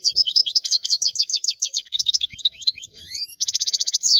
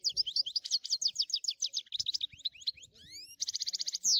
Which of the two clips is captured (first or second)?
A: second